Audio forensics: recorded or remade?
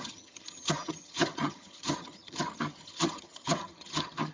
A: remade